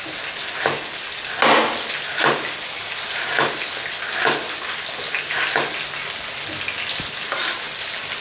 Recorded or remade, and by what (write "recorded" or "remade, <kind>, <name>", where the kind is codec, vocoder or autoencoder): recorded